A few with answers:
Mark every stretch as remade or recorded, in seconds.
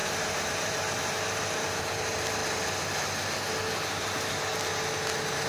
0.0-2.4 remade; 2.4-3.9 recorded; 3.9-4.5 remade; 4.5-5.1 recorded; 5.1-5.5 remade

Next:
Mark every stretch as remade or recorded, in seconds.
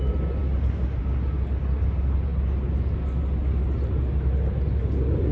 0.0-5.3 recorded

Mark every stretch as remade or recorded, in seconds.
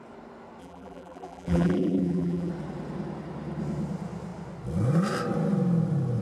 0.0-0.6 recorded; 0.6-2.5 remade; 2.5-6.2 recorded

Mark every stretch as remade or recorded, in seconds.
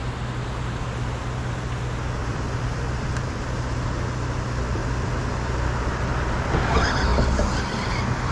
0.0-2.2 recorded; 2.2-3.4 remade; 3.4-8.3 recorded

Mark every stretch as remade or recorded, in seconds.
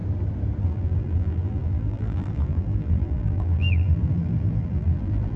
0.0-0.6 recorded; 0.6-5.4 remade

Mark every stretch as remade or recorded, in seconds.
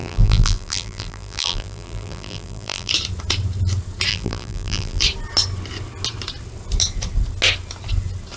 0.0-2.9 remade; 2.9-4.1 recorded; 4.1-5.0 remade; 5.0-8.4 recorded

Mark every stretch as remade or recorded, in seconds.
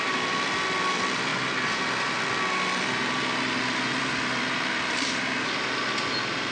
0.0-6.5 recorded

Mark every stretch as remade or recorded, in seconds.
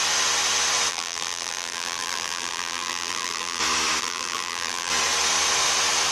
0.0-0.9 recorded; 0.9-3.6 remade; 3.6-4.0 recorded; 4.0-4.9 remade; 4.9-6.1 recorded